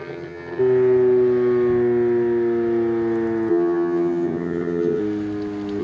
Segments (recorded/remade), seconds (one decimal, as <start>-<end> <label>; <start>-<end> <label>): 0.0-0.6 remade; 0.6-3.5 recorded; 3.5-5.0 remade; 5.0-5.8 recorded